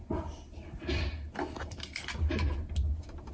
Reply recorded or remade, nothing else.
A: recorded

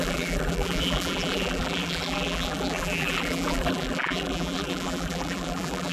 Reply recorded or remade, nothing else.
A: remade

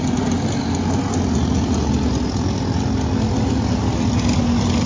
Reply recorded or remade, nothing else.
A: recorded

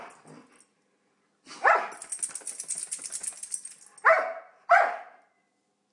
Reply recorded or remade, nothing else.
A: recorded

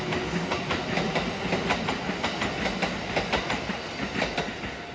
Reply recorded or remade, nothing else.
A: recorded